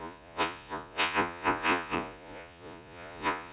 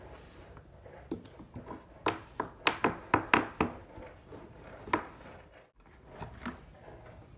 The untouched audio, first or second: second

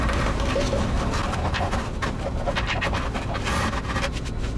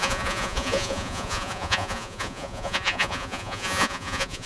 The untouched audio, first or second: first